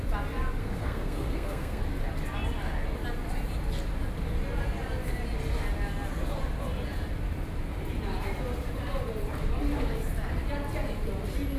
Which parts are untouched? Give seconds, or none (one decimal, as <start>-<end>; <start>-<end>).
0.0-0.6; 1.8-11.6